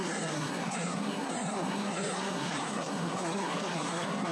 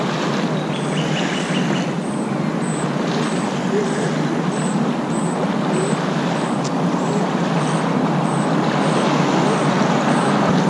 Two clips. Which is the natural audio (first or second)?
second